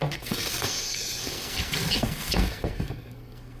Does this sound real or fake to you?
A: fake